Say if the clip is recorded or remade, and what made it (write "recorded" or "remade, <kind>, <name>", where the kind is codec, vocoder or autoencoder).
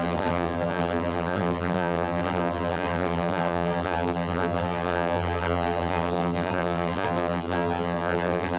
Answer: remade, vocoder, BigVGAN v2